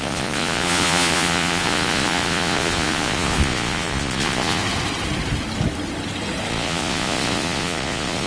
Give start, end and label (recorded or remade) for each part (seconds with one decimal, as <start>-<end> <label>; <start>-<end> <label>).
0.0-4.6 remade; 4.6-6.5 recorded; 6.5-8.3 remade